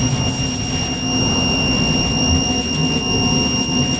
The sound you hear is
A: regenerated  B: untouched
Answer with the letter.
B